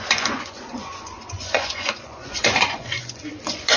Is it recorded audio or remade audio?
remade